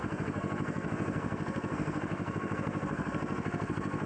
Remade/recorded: remade